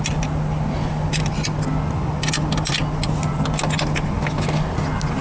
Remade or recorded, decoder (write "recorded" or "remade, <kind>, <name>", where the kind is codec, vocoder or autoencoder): recorded